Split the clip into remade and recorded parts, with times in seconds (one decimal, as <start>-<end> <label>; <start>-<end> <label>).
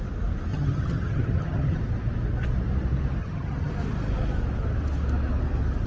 0.0-0.5 recorded; 0.5-1.8 remade; 1.8-3.2 recorded; 3.2-3.7 remade; 3.7-5.9 recorded